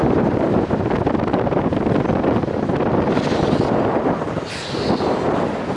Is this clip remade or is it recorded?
recorded